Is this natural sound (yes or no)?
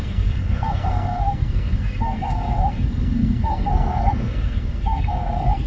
no